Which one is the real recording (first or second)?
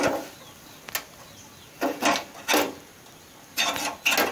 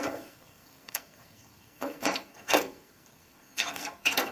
first